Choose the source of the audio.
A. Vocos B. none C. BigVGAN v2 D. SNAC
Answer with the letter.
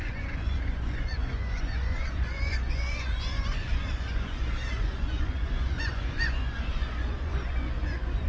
A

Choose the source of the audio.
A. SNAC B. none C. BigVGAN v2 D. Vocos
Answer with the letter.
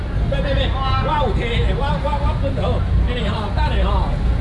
B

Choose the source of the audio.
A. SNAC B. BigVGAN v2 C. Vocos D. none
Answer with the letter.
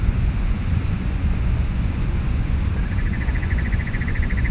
C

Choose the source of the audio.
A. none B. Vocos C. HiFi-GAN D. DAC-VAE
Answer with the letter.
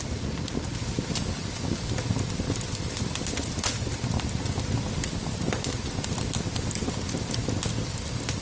A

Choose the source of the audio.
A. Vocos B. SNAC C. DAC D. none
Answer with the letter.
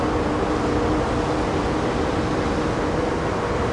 D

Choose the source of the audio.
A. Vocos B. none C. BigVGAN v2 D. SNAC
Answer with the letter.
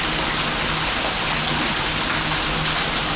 B